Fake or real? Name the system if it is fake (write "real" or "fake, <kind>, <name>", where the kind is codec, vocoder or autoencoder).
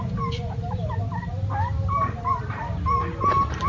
fake, vocoder, BigVGAN v2